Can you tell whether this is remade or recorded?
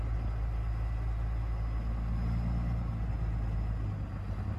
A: recorded